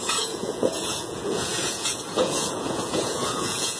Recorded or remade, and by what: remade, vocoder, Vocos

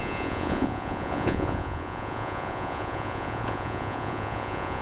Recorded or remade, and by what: remade, vocoder, Vocos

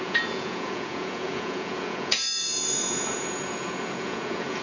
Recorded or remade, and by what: remade, vocoder, Vocos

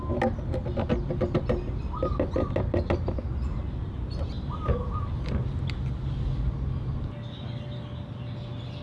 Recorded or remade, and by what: recorded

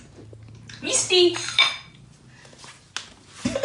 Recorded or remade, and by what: recorded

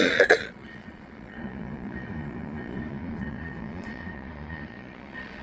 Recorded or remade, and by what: remade, vocoder, Vocos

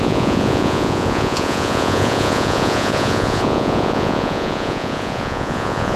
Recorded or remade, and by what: remade, vocoder, Vocos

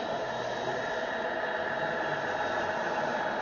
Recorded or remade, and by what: recorded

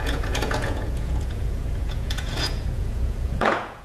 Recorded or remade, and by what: remade, vocoder, Vocos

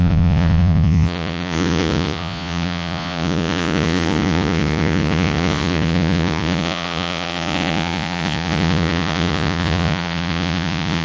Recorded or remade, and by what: remade, vocoder, Vocos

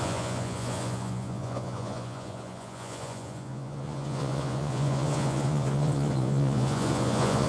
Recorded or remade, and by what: remade, vocoder, Vocos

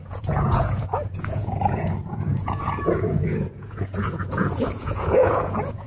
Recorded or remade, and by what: remade, vocoder, Vocos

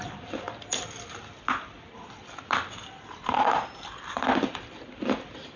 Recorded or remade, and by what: recorded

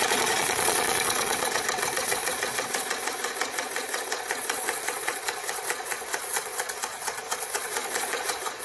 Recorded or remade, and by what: remade, vocoder, Vocos